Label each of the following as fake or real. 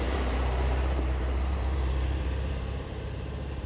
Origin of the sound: fake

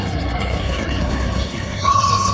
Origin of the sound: fake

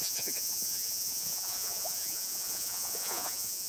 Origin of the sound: fake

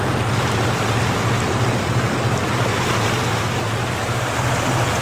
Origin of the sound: real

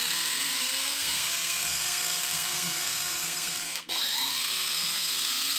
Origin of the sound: fake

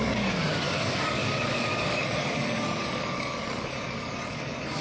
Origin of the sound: fake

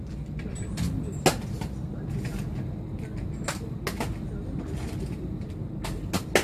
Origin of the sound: real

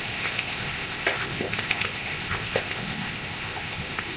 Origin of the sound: fake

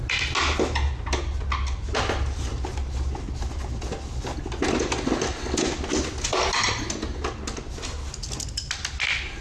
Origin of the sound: real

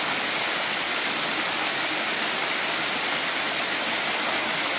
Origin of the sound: real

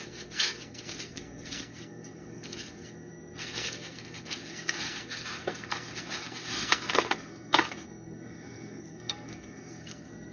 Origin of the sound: fake